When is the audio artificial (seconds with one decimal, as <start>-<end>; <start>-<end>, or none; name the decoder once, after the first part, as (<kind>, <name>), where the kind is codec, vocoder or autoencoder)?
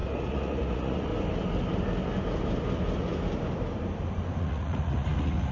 0.0-1.1 (vocoder, Vocos); 4.4-5.5